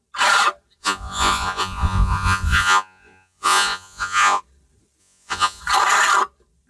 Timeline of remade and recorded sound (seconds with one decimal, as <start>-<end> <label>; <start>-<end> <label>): 0.0-0.8 recorded; 0.8-4.4 remade; 4.4-5.0 recorded; 5.0-5.6 remade; 5.6-6.7 recorded